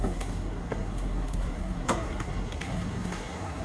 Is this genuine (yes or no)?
no